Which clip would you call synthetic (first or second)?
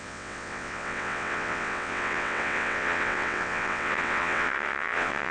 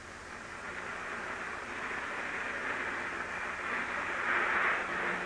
first